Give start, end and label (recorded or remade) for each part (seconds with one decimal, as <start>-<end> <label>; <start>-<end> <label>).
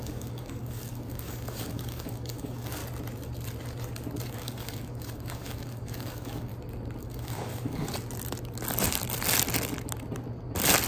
0.0-2.8 remade; 2.8-4.3 recorded; 4.3-6.5 remade; 6.5-7.0 recorded; 7.0-7.9 remade; 7.9-10.9 recorded